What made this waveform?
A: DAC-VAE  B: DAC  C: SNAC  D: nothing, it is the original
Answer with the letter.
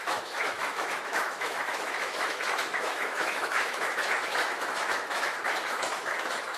A